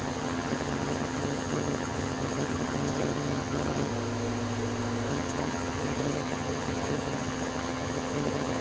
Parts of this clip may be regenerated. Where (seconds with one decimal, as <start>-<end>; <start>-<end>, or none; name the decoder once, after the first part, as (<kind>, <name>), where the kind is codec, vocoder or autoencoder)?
0.0-3.9 (vocoder, HiFi-GAN); 5.1-8.6